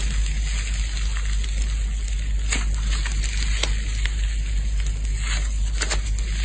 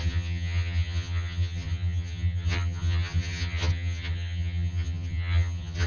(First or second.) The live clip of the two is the first